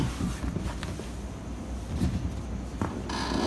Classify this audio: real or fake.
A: real